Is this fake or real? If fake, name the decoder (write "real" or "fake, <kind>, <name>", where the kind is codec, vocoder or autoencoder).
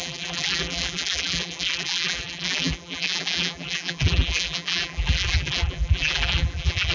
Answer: fake, vocoder, BigVGAN v2